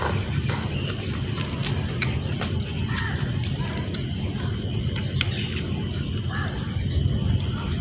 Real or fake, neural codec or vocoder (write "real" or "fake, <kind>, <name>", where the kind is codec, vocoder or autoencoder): real